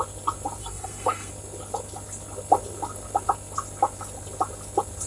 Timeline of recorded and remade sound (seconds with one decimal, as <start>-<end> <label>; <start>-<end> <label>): 0.0-0.6 recorded; 0.6-1.3 remade; 1.3-5.1 recorded